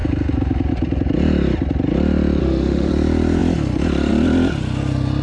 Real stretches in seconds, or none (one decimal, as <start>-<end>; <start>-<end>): 0.0-2.4; 2.9-5.2